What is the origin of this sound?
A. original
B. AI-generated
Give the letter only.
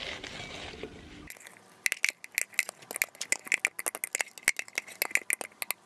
A